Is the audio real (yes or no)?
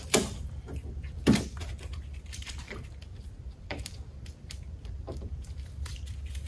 no